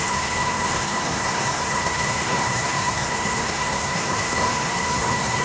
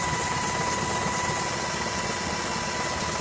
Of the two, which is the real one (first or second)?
second